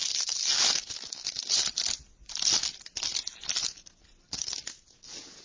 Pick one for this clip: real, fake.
real